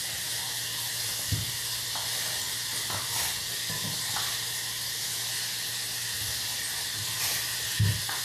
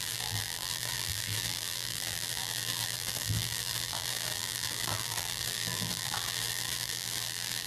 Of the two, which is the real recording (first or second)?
first